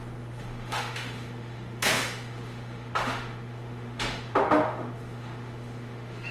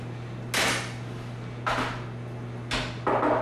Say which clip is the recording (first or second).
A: second